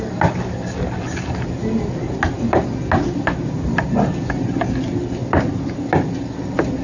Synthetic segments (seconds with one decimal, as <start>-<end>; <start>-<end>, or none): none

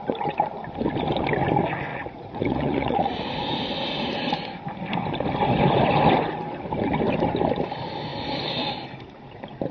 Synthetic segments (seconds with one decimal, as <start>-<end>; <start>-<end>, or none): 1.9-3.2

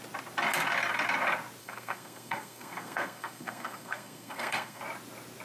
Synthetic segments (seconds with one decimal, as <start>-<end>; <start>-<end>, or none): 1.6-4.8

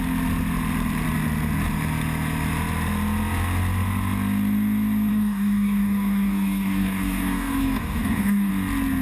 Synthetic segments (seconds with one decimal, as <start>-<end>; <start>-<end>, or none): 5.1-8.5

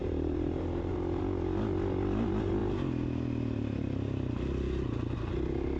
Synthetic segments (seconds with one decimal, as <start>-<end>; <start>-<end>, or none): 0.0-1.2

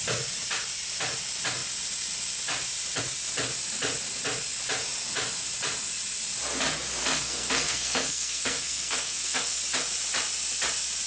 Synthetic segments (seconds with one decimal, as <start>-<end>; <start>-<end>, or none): 7.0-9.6

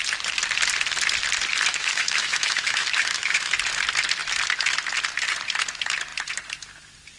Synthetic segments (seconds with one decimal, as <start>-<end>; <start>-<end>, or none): 1.7-3.5